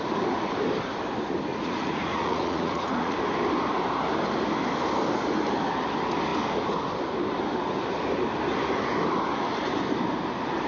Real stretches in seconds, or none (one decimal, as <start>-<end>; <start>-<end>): 0.0-1.5; 3.2-10.7